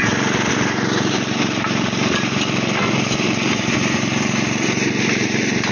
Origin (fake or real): real